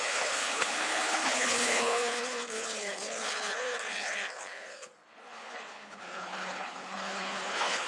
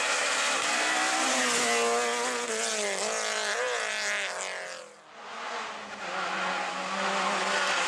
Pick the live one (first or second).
second